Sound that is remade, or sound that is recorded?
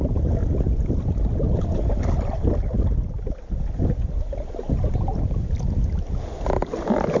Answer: recorded